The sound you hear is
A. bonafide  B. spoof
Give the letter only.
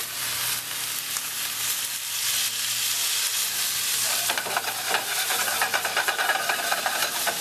A